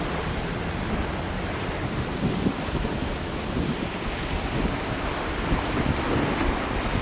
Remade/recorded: recorded